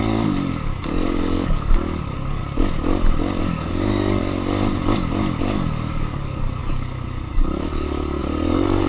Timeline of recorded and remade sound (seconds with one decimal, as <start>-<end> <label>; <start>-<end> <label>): 0.0-2.4 remade; 2.4-3.4 recorded; 3.4-4.2 remade; 4.2-5.4 recorded; 5.4-8.9 remade